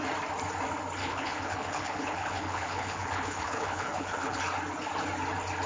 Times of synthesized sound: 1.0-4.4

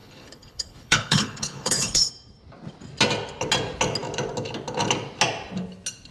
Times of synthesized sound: 0.0-2.1

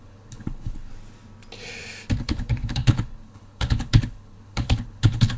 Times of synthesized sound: 0.0-0.9; 2.2-5.4

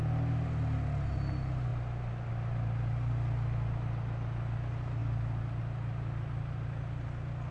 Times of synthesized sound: none

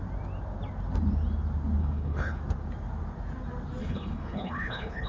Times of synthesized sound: 1.8-2.4; 3.8-5.1

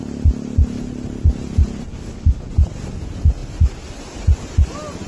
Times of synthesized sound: 1.9-2.5